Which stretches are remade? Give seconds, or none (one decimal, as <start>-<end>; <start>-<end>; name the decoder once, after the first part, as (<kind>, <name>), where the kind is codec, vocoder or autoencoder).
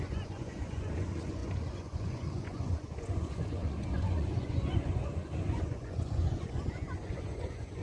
0.0-7.8 (vocoder, Vocos)